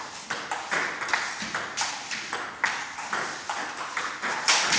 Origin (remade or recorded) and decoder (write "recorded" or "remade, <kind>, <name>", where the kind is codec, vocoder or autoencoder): recorded